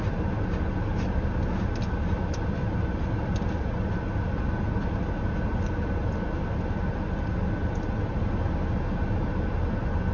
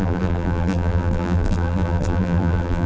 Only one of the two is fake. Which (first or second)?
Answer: second